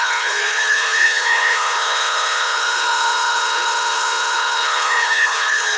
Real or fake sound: fake